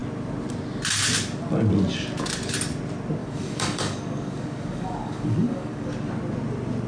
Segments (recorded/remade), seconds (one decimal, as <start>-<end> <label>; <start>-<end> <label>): 0.0-3.2 recorded; 3.2-5.9 remade; 5.9-6.9 recorded